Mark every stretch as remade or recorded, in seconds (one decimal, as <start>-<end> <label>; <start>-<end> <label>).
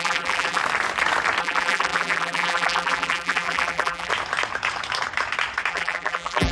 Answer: 0.0-0.6 remade; 0.6-1.4 recorded; 1.4-4.1 remade; 4.1-5.7 recorded; 5.7-6.5 remade